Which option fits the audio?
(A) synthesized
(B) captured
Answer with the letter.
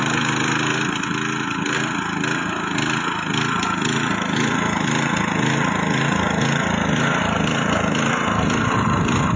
B